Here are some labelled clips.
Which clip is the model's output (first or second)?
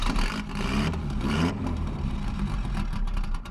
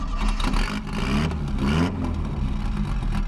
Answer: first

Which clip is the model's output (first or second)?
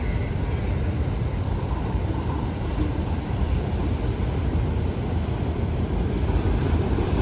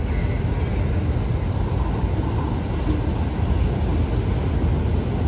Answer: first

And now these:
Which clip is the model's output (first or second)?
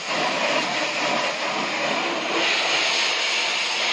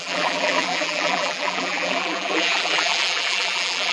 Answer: second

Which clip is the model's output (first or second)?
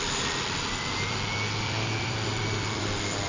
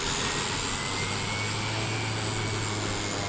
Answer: first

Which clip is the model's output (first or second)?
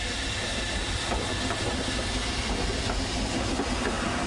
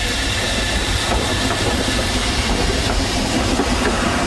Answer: second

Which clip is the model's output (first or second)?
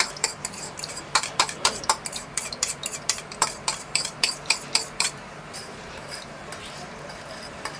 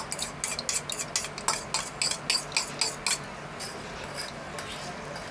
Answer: first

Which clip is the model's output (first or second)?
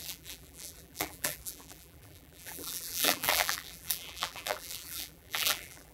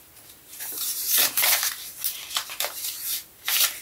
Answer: first